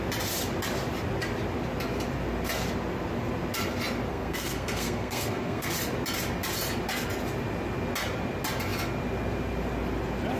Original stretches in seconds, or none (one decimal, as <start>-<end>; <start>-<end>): 0.0-4.1; 5.7-10.4